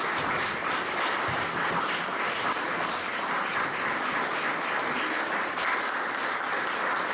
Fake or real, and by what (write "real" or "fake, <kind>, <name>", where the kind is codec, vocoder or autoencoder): real